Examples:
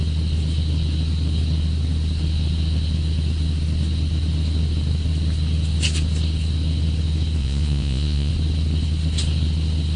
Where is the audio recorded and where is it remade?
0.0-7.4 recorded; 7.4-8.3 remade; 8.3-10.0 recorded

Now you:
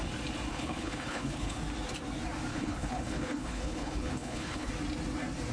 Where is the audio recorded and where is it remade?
0.0-0.5 recorded; 0.5-1.6 remade; 1.6-2.5 recorded; 2.5-4.7 remade; 4.7-5.5 recorded

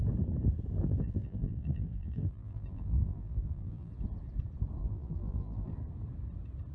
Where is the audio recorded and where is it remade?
0.0-0.8 recorded; 0.8-3.9 remade; 3.9-4.8 recorded; 4.8-5.7 remade; 5.7-6.7 recorded

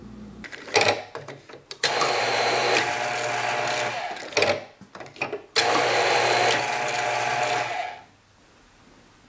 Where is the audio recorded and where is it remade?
0.0-2.9 remade; 2.9-9.3 recorded